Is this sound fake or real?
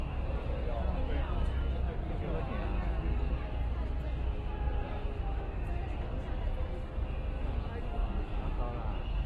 real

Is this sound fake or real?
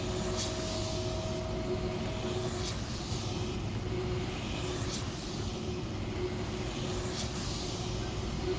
real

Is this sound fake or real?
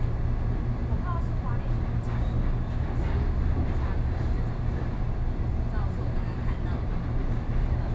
real